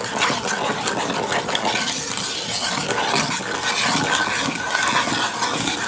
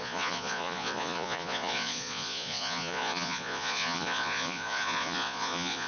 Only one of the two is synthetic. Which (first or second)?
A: second